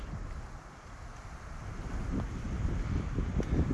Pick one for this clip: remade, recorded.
recorded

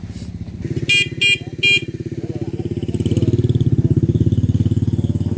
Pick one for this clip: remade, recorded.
recorded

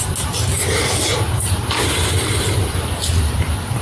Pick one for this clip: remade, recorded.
recorded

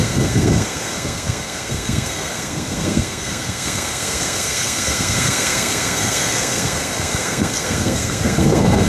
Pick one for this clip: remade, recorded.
remade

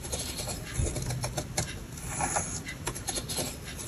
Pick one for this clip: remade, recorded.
recorded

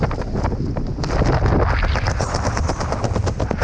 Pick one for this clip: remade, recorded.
recorded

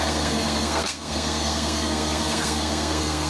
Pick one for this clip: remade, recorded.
remade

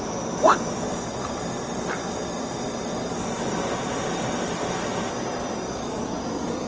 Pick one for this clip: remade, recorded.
recorded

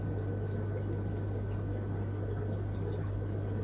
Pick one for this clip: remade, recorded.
recorded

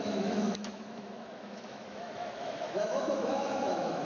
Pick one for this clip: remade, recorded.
remade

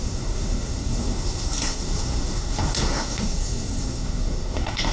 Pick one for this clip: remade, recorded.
remade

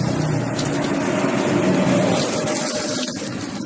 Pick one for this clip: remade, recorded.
recorded